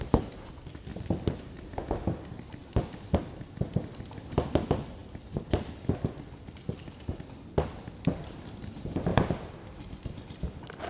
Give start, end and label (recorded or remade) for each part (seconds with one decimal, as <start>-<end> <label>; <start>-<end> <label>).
0.0-10.9 recorded